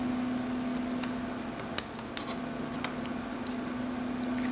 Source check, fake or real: real